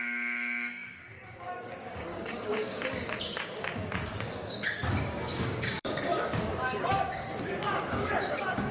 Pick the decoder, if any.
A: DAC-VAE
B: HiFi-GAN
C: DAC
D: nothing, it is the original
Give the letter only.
C